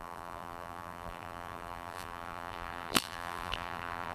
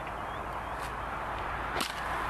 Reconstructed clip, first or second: first